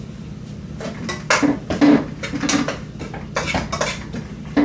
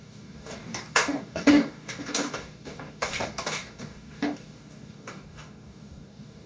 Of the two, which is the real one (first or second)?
first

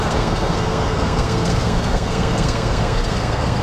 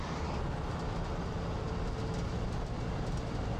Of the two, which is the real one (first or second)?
second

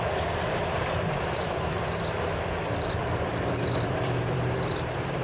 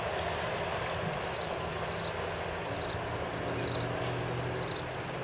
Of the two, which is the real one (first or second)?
second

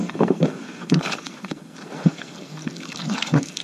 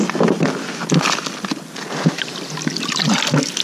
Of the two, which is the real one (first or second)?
second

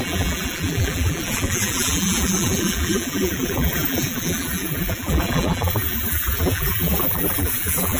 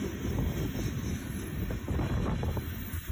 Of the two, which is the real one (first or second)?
second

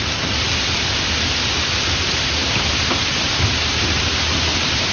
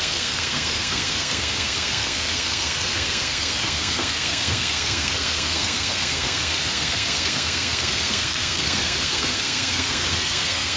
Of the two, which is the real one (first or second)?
first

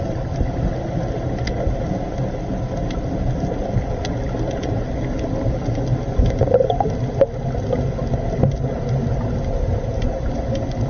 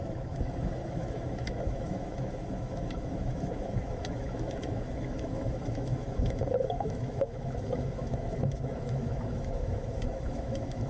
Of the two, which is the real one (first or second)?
first